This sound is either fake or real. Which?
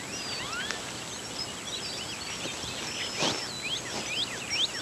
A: real